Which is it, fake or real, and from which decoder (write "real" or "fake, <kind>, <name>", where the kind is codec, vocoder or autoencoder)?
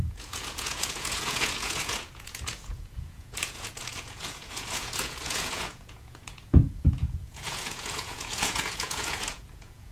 fake, vocoder, Vocos